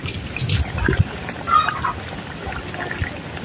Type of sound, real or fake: real